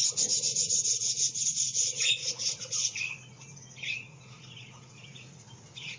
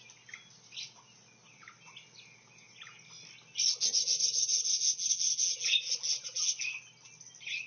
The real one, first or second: second